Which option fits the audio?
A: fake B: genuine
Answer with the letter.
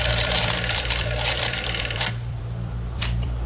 A